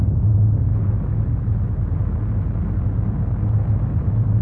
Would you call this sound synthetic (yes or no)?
no